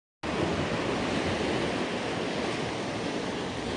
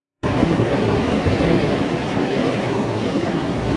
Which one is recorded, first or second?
first